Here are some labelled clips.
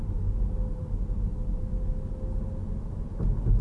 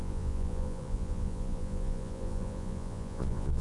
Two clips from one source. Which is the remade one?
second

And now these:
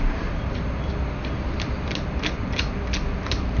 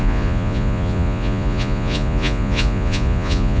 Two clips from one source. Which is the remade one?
second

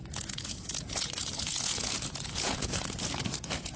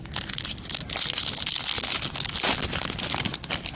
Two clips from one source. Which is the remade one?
first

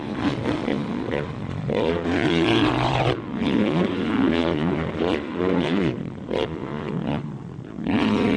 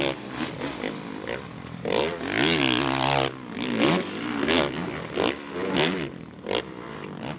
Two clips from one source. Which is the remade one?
first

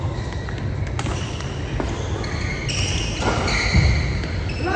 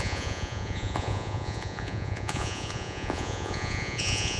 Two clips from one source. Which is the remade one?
second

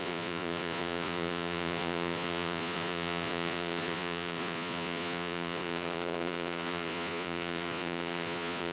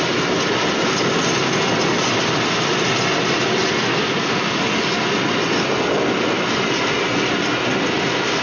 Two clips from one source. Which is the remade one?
first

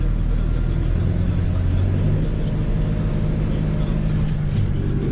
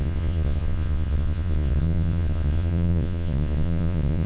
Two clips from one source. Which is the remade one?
second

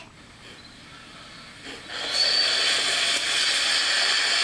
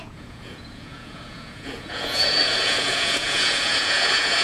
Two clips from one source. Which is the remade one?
second